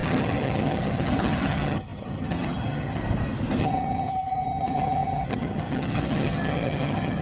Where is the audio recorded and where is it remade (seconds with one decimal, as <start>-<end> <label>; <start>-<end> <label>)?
0.0-3.0 remade; 3.0-3.6 recorded; 3.6-7.2 remade